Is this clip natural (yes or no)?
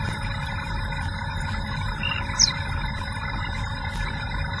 yes